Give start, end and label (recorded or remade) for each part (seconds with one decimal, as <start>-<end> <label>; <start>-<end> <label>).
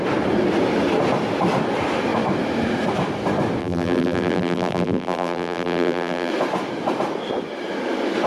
0.0-3.6 recorded; 3.6-6.3 remade; 6.3-8.3 recorded